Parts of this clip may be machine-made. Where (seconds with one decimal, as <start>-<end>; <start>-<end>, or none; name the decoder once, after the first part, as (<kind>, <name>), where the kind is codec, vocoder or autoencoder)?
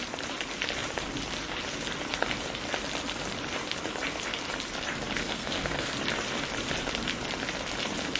5.2-5.9 (codec, SNAC)